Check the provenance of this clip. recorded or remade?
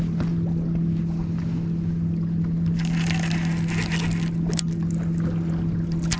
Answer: recorded